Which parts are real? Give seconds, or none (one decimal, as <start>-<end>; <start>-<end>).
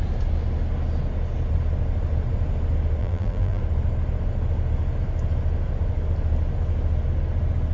0.0-3.0; 3.6-7.7